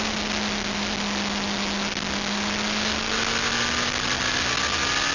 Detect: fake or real real